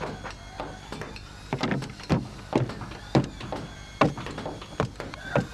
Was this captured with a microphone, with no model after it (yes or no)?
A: yes